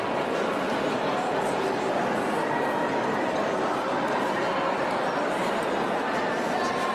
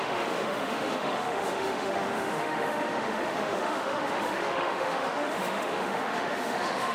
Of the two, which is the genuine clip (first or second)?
first